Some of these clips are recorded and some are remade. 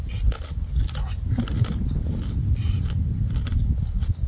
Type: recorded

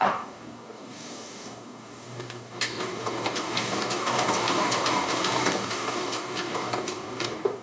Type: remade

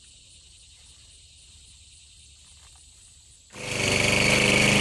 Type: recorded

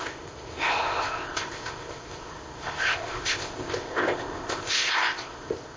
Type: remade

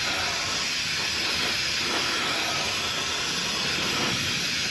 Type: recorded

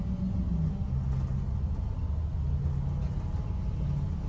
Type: recorded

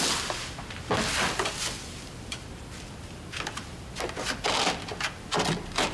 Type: recorded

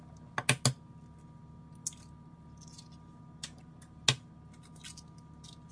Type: recorded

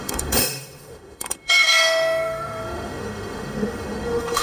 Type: remade